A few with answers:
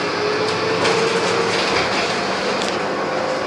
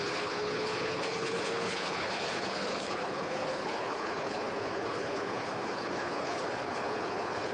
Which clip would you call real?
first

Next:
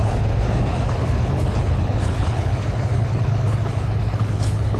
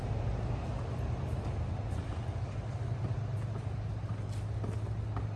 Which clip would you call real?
second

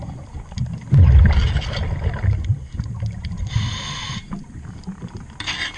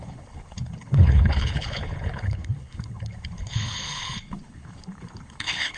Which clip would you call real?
first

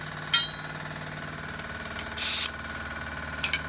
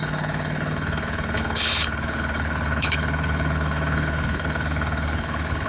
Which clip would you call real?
first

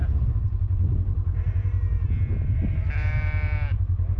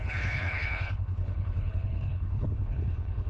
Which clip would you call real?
first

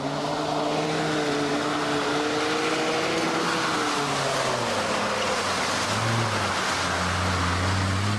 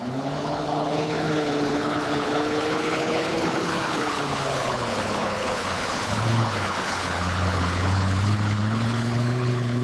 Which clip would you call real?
first